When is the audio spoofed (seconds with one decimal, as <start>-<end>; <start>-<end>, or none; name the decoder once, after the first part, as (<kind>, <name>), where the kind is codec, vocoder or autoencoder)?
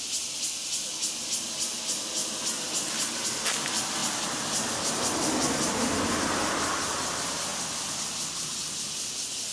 none